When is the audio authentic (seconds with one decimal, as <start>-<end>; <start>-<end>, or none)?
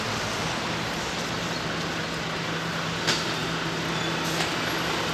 0.0-5.1